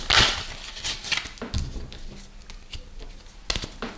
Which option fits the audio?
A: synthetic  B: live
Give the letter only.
B